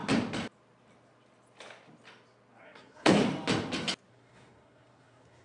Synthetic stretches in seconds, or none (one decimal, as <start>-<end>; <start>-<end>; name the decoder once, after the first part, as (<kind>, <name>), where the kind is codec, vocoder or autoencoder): 2.6-3.2 (codec, SNAC); 4.1-5.4